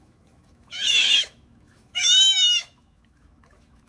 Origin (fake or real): fake